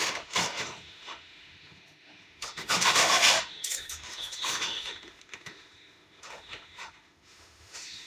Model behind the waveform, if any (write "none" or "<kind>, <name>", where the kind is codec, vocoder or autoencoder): autoencoder, DAC-VAE